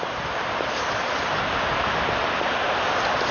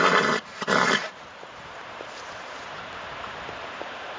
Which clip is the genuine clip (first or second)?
first